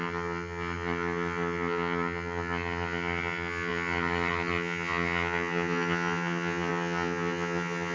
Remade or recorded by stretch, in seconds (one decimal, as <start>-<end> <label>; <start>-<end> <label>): 0.0-7.9 remade